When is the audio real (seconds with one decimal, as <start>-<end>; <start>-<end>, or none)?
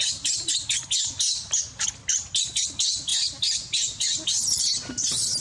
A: 0.0-5.4